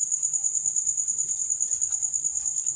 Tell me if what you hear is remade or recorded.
recorded